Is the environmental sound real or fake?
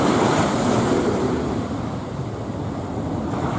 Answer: real